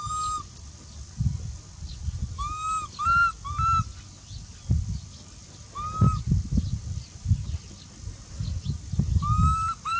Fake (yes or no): no